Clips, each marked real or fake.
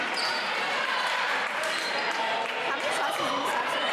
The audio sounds fake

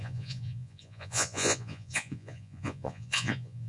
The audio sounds fake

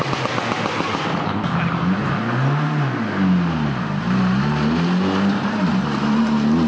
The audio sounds real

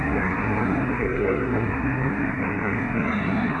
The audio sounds fake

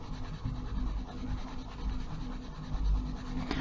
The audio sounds real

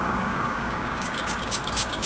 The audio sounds fake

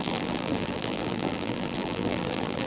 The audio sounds fake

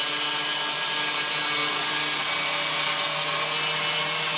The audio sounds real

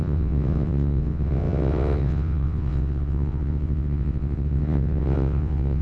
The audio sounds fake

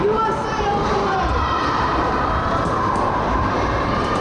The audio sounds fake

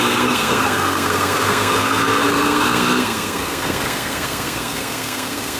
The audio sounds fake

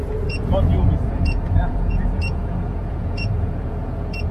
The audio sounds fake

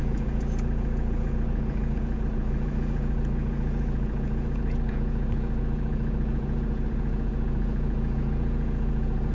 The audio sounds fake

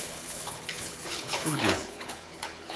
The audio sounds fake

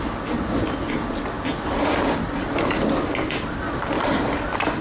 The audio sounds real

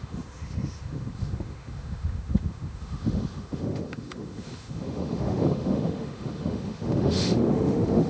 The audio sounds fake